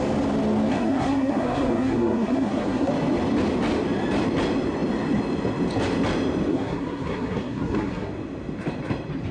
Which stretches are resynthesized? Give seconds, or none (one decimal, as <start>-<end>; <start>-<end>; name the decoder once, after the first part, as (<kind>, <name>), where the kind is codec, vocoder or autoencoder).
0.7-2.9 (codec, SNAC); 6.5-8.1